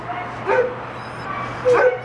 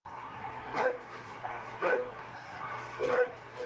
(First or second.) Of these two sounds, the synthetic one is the second